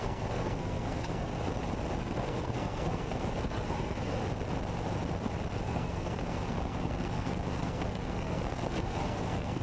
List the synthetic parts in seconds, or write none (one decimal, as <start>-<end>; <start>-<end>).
0.0-1.3; 2.0-4.2; 5.6-9.6